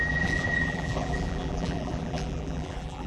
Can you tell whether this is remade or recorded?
remade